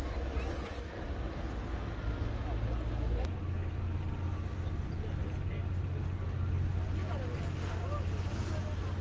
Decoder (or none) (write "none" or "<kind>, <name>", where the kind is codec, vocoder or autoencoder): none